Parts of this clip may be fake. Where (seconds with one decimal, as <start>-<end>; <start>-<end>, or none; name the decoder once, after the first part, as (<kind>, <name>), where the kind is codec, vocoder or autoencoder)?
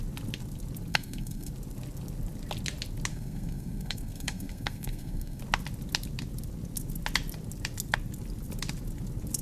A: 0.9-1.5 (codec, SNAC); 3.1-5.4